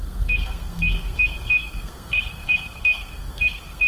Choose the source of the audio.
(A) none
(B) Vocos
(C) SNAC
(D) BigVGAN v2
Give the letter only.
C